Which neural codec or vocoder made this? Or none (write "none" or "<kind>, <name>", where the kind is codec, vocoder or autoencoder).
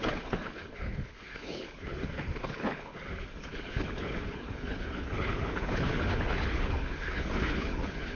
codec, HILCodec